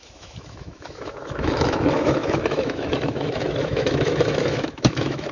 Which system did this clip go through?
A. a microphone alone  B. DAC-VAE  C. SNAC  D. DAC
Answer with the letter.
B